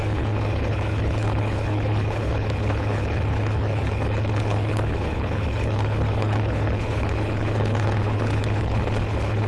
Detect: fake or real fake